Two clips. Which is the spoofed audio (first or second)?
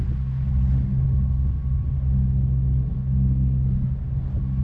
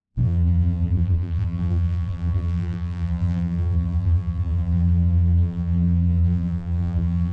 second